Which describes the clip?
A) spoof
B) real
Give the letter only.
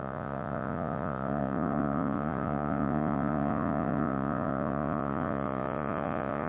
A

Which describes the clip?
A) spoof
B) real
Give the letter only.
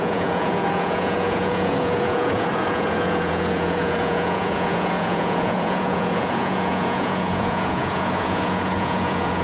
A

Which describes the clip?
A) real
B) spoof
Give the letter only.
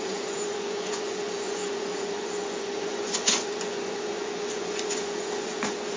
B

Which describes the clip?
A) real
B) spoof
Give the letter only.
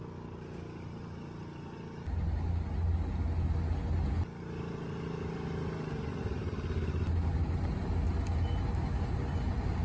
A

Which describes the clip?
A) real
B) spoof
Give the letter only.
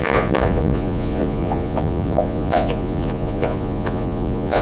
B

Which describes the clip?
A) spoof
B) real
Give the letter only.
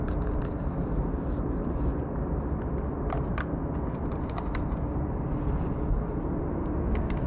B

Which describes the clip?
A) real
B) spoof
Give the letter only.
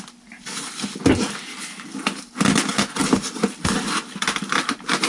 A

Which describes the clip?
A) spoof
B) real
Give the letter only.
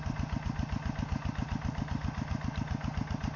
B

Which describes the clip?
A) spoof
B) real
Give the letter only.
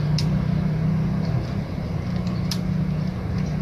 B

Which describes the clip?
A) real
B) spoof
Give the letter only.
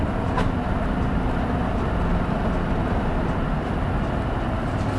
A